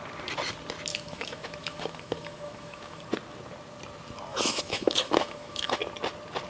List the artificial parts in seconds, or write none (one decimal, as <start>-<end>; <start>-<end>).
0.9-3.0; 4.3-5.8